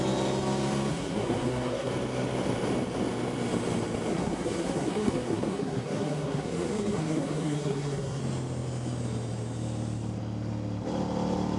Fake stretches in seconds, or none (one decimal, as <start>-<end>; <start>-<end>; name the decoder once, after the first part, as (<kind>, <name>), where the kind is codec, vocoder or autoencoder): 0.9-1.9 (codec, SNAC); 4.1-8.2